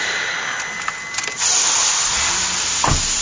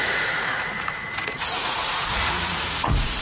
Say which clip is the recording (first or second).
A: first